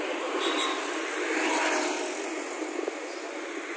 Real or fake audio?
real